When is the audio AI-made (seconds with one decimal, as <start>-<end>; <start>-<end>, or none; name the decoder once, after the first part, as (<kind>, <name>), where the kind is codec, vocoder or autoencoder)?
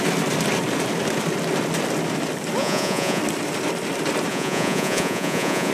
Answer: 2.6-3.2 (vocoder, Vocos); 4.3-5.7